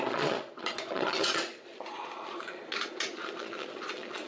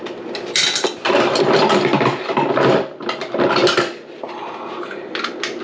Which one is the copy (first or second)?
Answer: first